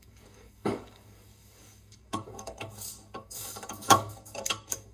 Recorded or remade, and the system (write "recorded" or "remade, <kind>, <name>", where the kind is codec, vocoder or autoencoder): remade, codec, DAC